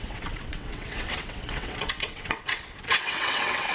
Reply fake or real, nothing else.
fake